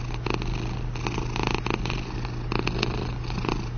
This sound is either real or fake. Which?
real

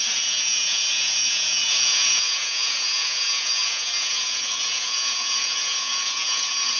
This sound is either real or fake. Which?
fake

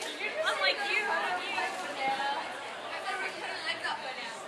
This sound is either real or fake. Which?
real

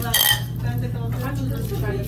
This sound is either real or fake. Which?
real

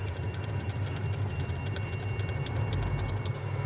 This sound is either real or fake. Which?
real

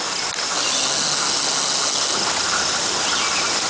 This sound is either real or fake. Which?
real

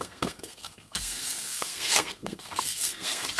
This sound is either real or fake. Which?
fake